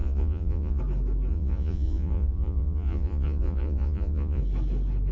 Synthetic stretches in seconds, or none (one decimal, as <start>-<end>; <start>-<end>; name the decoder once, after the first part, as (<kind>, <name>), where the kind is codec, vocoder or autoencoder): 0.0-0.8 (vocoder, Vocos); 1.3-4.4